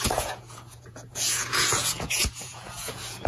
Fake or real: fake